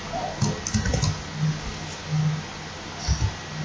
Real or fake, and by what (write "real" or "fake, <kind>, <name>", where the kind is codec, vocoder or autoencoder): real